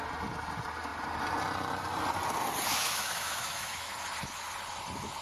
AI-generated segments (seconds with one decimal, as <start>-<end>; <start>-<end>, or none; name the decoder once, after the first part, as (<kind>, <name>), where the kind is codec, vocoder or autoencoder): 2.7-3.9 (autoencoder, DAC-VAE)

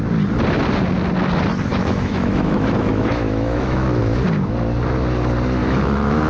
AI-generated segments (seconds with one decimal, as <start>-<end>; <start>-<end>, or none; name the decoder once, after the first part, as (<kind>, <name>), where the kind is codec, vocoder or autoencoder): 1.7-4.0 (autoencoder, DAC-VAE); 5.6-6.3

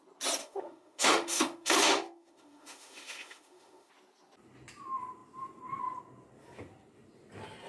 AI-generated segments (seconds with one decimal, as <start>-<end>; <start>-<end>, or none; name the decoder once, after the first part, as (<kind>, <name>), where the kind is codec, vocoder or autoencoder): 0.4-3.9 (autoencoder, DAC-VAE)

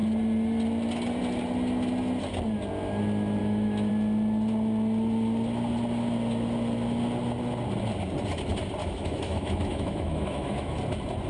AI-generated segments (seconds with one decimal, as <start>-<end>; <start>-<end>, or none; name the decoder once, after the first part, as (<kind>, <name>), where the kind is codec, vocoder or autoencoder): 3.4-3.9 (autoencoder, DAC-VAE); 8.8-10.8

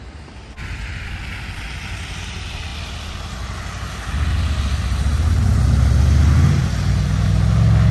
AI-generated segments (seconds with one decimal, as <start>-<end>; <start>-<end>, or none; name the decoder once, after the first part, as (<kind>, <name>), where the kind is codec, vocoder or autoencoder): none

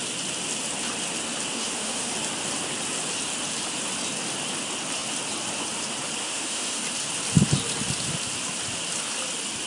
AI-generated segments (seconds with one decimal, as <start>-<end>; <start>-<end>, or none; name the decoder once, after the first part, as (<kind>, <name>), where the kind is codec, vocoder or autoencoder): 1.5-2.1 (autoencoder, DAC-VAE); 6.2-6.8

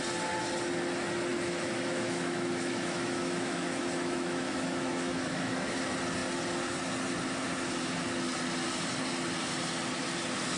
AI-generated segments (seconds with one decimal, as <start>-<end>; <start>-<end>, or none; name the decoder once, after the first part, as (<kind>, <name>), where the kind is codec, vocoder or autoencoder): 1.3-5.8 (autoencoder, DAC-VAE)

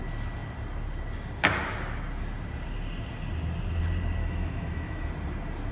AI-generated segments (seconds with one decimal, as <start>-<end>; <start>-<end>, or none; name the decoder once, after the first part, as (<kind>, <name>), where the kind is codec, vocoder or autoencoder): 4.2-5.1 (autoencoder, DAC-VAE)